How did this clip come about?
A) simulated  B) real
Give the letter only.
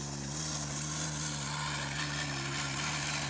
B